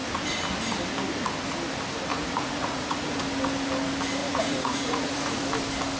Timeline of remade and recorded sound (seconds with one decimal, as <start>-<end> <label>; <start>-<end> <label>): 0.0-2.1 recorded; 2.1-3.2 remade; 3.2-4.2 recorded; 4.2-5.4 remade; 5.4-6.0 recorded